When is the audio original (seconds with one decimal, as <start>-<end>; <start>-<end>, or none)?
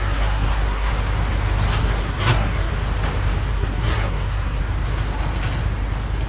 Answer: 0.9-1.8; 2.7-3.5; 4.6-6.3